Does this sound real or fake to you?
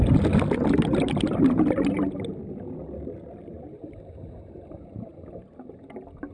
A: real